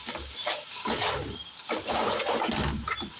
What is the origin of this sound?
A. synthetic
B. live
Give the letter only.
B